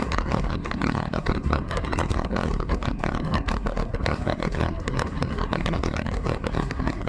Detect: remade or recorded remade